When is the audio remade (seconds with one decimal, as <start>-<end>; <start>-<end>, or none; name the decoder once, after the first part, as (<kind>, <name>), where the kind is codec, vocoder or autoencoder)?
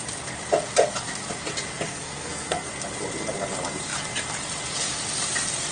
1.9-2.7 (codec, SNAC)